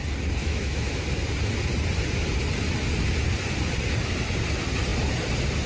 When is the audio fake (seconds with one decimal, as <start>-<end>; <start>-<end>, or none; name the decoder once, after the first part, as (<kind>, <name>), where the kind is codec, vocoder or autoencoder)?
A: 0.4-1.1 (autoencoder, DAC-VAE)